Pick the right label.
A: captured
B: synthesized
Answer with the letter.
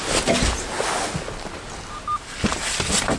A